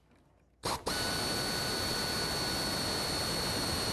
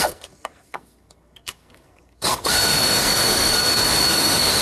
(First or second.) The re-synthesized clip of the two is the second